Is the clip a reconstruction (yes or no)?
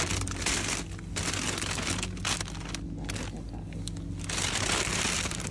no